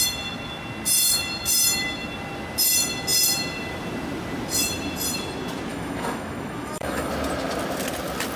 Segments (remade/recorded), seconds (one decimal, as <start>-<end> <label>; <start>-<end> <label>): 0.0-5.7 recorded; 5.7-7.1 remade; 7.1-8.4 recorded